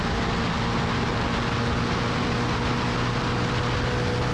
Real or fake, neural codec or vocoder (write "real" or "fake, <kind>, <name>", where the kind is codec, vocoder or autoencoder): real